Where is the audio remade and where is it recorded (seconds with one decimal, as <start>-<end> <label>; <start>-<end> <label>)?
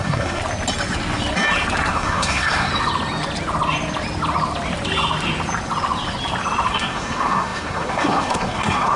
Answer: 0.0-0.4 remade; 0.4-1.9 recorded; 1.9-2.7 remade; 2.7-6.7 recorded; 6.7-9.0 remade